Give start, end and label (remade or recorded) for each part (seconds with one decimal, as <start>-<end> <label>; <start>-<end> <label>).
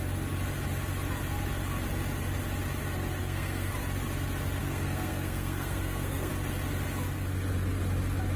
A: 0.0-3.2 recorded; 3.2-3.7 remade; 3.7-4.6 recorded; 4.6-6.3 remade; 6.3-8.4 recorded